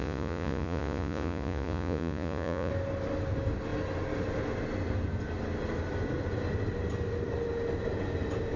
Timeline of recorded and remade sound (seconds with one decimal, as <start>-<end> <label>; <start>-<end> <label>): 0.0-2.7 remade; 2.7-8.6 recorded